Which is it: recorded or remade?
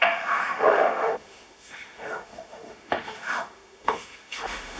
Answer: remade